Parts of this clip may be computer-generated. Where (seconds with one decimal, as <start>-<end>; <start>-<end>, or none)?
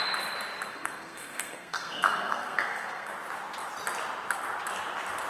0.7-3.1